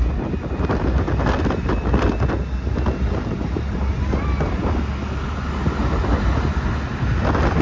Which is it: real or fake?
real